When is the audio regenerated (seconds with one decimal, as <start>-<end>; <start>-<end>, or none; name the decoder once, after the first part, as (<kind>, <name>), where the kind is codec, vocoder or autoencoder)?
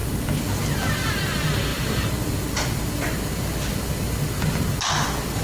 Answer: none